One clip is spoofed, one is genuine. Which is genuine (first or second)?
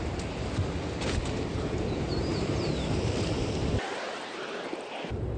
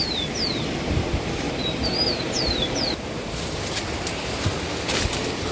first